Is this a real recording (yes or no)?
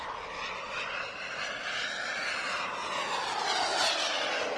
yes